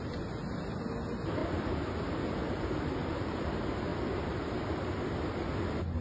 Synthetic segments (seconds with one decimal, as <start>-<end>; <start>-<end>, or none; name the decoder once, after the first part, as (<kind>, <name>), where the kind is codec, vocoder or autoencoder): 3.0-3.5 (vocoder, BigVGAN v2)

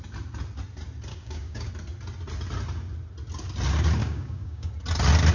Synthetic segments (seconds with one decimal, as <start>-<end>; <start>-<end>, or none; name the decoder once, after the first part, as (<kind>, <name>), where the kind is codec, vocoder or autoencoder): 1.1-1.7 (codec, DAC); 4.0-4.7

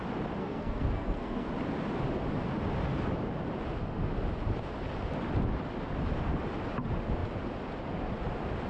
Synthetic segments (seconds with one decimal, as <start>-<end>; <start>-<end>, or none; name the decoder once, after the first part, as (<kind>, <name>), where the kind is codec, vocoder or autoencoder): 0.4-1.5 (codec, SNAC)

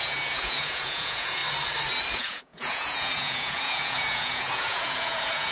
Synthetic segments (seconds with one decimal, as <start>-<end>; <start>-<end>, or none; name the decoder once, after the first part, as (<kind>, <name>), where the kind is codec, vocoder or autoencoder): 0.0-1.4 (vocoder, Vocos); 2.1-5.5

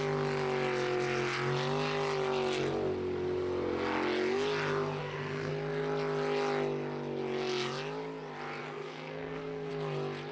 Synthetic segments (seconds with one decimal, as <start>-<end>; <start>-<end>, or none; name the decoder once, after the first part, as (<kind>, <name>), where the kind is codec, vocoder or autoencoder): 5.0-5.5 (codec, SNAC); 8.6-9.7

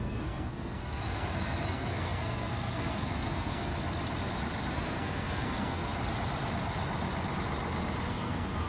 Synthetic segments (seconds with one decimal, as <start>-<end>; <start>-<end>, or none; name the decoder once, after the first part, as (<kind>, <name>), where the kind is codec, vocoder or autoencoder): 0.0-3.7 (codec, SNAC); 4.7-5.9; 8.1-8.7

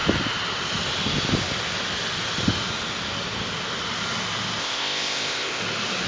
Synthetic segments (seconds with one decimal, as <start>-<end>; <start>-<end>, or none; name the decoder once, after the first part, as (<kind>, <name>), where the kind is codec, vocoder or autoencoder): 4.6-5.6 (codec, ZipCodec)